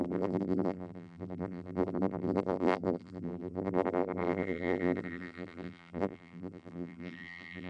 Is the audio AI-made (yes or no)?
yes